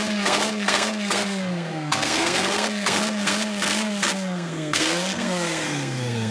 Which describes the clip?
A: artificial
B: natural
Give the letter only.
A